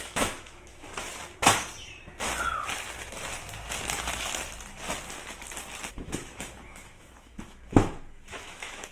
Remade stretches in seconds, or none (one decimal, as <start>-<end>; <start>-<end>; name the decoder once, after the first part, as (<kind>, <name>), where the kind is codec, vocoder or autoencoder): 0.0-0.9 (autoencoder, DAC-VAE); 5.9-8.9